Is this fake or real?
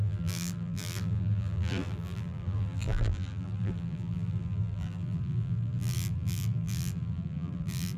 fake